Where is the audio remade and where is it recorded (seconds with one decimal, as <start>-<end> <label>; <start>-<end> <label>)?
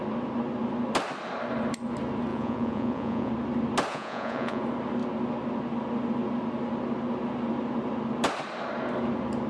0.0-2.3 recorded; 2.3-3.3 remade; 3.3-3.9 recorded; 3.9-4.6 remade; 4.6-9.5 recorded